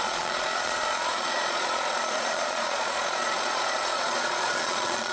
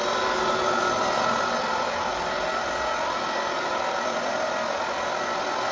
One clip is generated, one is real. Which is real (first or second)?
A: second